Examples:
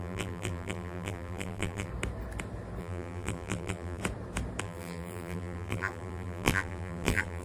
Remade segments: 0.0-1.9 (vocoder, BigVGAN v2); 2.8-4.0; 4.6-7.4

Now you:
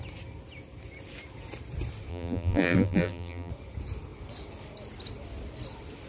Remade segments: 2.1-3.5 (vocoder, BigVGAN v2)

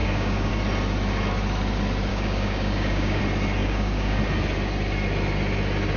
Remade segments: 0.0-0.5 (codec, DAC); 2.1-3.2; 3.6-4.2

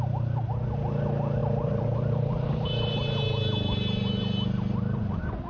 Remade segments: 1.4-2.5 (vocoder, BigVGAN v2)

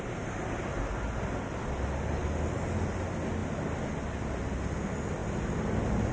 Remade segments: none

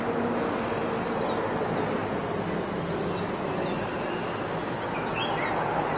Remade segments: none